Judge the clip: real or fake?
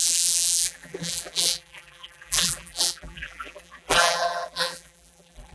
fake